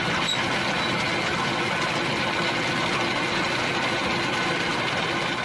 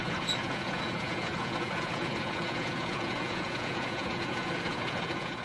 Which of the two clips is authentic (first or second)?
first